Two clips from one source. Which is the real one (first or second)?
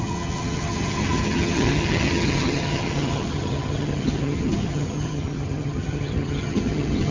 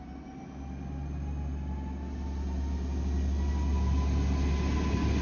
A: second